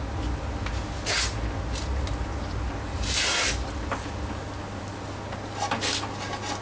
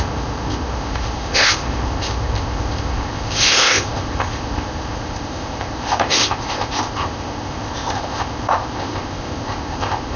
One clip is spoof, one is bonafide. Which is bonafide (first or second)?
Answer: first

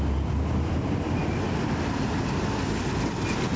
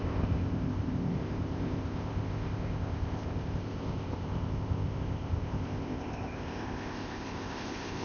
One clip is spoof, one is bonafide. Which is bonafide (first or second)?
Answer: first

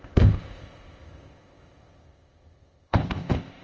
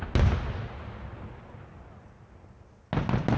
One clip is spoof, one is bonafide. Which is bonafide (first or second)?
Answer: second